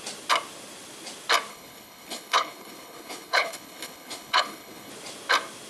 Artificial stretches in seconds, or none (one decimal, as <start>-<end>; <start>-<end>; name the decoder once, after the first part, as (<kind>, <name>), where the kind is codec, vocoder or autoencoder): 1.5-4.9 (codec, HILCodec)